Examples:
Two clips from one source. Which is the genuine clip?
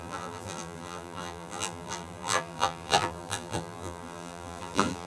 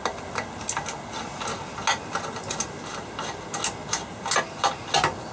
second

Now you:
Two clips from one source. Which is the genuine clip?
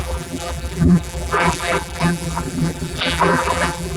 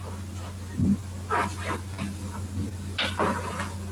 second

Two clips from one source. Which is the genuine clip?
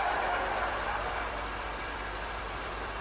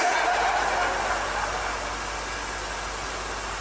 second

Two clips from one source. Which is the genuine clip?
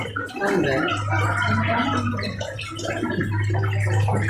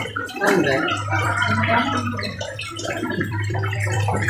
first